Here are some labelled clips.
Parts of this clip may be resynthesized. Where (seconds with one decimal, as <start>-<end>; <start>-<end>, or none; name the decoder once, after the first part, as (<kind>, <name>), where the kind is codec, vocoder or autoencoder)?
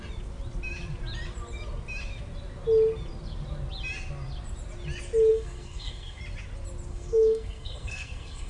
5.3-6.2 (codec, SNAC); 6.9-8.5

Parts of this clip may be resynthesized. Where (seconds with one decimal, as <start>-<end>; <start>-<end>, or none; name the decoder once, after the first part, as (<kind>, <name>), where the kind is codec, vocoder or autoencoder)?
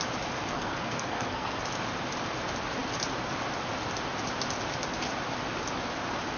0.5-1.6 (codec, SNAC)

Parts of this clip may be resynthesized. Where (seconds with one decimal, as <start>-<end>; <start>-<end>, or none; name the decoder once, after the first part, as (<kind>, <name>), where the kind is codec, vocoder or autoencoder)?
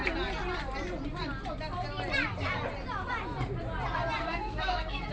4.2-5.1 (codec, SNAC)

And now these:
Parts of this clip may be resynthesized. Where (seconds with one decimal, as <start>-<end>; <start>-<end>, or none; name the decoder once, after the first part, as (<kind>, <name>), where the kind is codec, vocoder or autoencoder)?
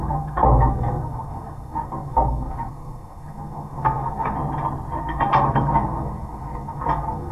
0.0-4.4 (codec, SNAC); 5.0-7.3